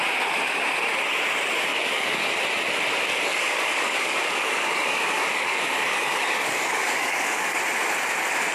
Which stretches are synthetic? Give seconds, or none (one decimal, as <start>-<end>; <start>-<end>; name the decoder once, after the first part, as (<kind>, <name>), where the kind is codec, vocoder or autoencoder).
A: 1.7-2.3 (codec, DAC); 3.1-7.6